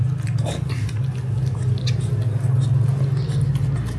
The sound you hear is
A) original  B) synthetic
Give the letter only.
A